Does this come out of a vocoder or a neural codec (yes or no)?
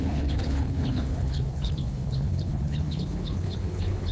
yes